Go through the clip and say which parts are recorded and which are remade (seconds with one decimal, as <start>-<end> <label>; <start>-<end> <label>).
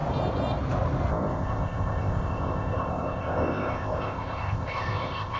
0.0-1.1 recorded; 1.1-5.4 remade